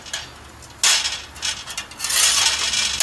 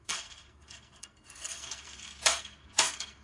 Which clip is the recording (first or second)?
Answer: first